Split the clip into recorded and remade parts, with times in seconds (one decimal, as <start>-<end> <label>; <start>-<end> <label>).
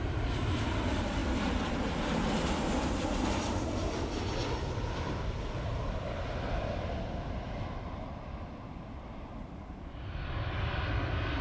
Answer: 0.0-11.4 recorded